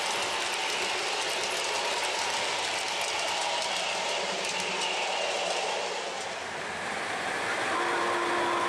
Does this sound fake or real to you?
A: real